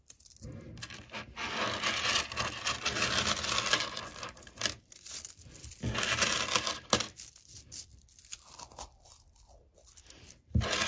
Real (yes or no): yes